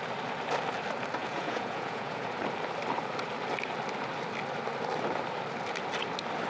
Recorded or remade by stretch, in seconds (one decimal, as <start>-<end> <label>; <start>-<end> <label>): 0.0-1.2 recorded; 1.2-2.3 remade; 2.3-6.5 recorded

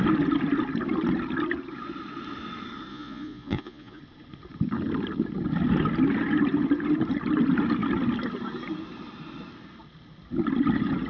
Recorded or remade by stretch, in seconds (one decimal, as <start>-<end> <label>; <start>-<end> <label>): 0.0-2.9 recorded; 2.9-4.0 remade; 4.0-11.1 recorded

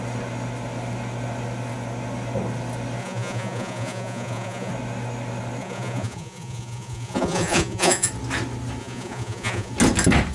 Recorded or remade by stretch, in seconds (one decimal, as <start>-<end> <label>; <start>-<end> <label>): 0.0-3.0 recorded; 3.0-4.7 remade; 4.7-5.6 recorded; 5.6-8.1 remade; 8.1-8.8 recorded; 8.8-9.7 remade; 9.7-10.3 recorded

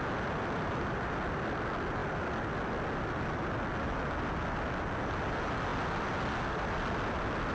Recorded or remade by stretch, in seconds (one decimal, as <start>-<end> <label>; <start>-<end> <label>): 0.0-7.5 recorded

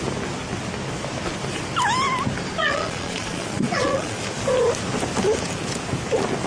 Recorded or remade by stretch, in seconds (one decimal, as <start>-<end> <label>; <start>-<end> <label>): 0.0-2.6 recorded; 2.6-4.2 remade; 4.2-6.5 recorded

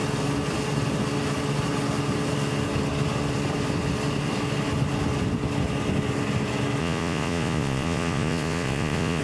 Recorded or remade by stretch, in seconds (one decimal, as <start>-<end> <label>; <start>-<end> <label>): 0.0-6.8 recorded; 6.8-9.2 remade